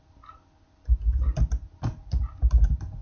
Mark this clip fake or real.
real